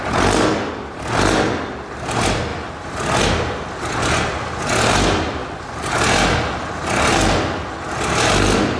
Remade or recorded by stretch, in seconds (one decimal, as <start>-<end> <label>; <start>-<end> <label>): 0.0-8.8 recorded